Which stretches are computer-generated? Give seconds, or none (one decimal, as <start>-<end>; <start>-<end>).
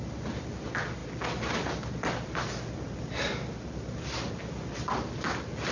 none